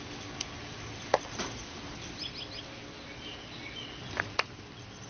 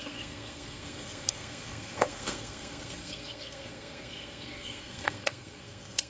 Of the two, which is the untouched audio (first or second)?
first